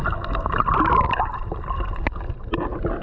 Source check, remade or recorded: recorded